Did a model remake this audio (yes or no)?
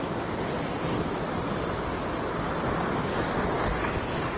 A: yes